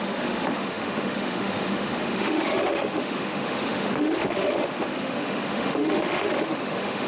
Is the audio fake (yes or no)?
yes